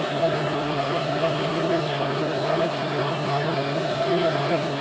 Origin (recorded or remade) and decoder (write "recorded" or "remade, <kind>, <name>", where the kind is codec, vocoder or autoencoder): remade, codec, SNAC